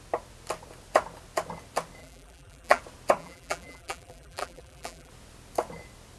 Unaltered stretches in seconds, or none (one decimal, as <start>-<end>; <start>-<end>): 0.0-2.0; 2.8-3.2; 5.1-6.2